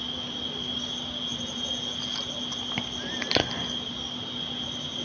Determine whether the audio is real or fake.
real